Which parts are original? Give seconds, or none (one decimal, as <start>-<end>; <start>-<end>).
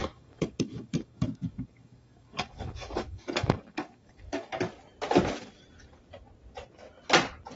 4.6-7.6